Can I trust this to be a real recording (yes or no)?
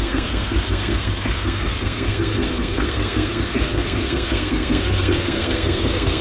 no